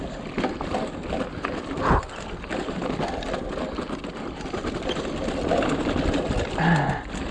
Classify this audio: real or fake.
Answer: real